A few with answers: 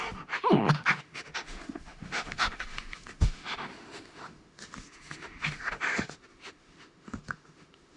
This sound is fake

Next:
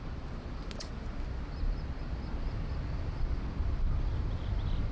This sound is real